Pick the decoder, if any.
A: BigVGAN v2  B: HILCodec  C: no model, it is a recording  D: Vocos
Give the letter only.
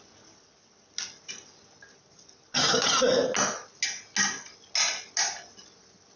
C